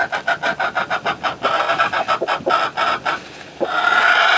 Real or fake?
real